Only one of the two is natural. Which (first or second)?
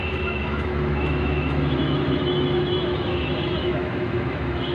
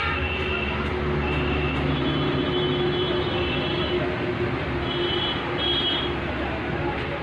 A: second